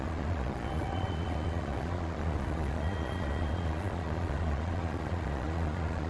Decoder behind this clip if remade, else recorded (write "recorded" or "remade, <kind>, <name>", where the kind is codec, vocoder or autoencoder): remade, vocoder, Vocos